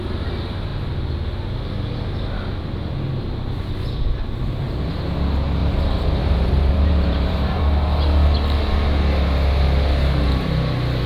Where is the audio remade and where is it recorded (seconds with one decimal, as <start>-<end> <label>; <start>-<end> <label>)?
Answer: 0.0-5.6 recorded; 5.6-7.6 remade; 7.6-11.1 recorded